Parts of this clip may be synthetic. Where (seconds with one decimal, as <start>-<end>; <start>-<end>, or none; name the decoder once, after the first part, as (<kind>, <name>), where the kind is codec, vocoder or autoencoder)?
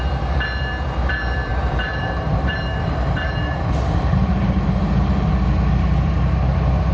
1.5-5.3 (vocoder, BigVGAN v2)